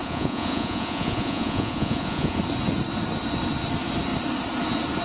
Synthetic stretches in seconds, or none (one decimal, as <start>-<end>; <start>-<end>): 0.0-2.4